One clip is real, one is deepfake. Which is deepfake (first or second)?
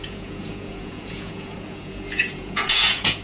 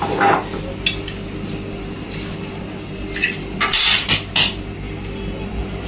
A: first